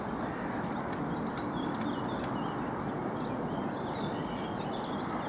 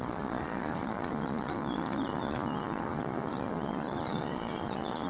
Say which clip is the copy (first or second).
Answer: second